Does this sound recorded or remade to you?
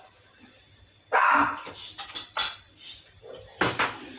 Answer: recorded